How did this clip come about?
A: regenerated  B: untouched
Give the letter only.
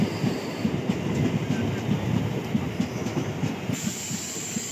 B